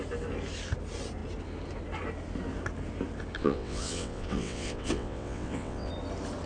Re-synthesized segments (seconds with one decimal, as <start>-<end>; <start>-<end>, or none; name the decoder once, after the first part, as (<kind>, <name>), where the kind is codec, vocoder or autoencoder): 3.4-5.9 (vocoder, WaveNeXt)